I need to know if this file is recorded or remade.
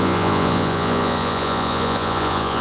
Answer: remade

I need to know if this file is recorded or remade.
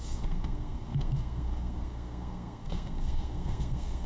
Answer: remade